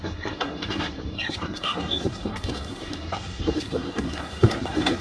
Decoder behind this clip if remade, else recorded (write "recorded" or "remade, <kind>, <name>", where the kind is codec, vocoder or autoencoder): remade, codec, SNAC